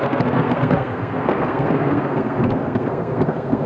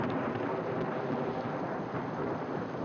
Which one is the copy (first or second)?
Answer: first